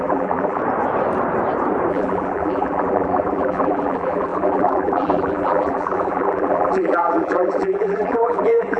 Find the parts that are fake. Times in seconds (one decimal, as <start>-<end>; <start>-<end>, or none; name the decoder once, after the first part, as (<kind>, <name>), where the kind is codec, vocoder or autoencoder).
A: 0.0-0.6 (vocoder, BigVGAN v2); 1.9-8.8